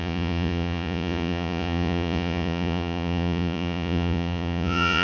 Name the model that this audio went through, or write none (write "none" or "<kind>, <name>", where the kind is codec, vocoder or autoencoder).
vocoder, Vocos